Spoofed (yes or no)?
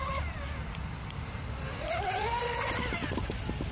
no